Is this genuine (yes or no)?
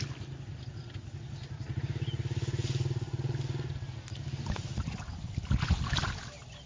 yes